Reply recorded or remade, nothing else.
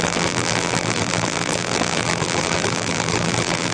remade